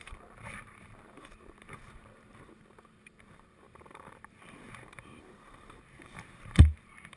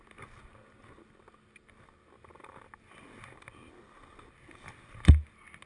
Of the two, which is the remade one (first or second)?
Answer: first